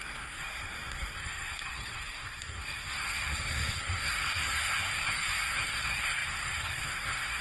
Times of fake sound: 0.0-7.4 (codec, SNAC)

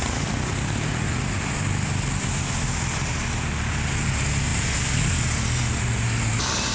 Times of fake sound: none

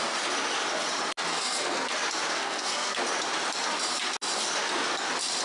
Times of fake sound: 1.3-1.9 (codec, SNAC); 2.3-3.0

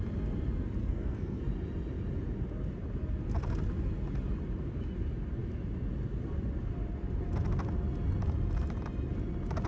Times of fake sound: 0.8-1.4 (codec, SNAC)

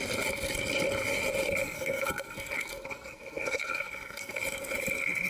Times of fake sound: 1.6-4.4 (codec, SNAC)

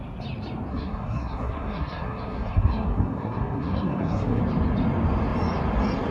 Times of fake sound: 0.7-4.4 (codec, SNAC)

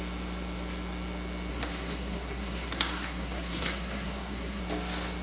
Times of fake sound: 1.5-4.6 (codec, SNAC)

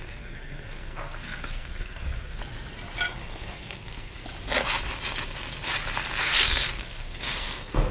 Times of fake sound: 0.0-2.4 (codec, SNAC); 3.1-4.2; 6.2-7.9